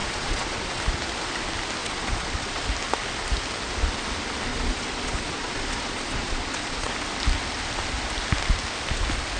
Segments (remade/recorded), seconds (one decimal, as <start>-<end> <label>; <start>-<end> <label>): 0.0-0.8 remade; 0.8-1.8 recorded; 1.8-2.6 remade; 2.6-4.5 recorded; 4.5-6.9 remade; 6.9-9.4 recorded